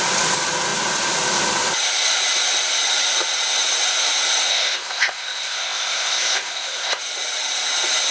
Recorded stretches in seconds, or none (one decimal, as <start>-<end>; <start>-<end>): 0.0-4.5; 7.0-8.1